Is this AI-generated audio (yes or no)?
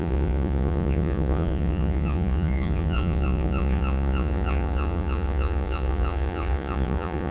yes